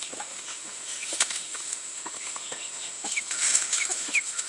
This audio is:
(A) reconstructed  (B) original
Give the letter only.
A